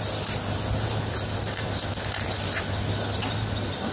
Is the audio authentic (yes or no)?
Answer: yes